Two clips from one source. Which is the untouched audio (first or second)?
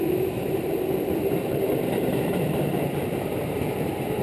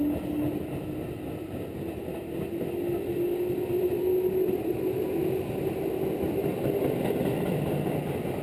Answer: second